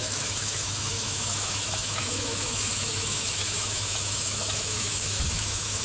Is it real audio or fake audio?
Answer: fake